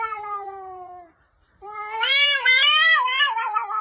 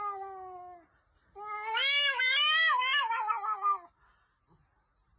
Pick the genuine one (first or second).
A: second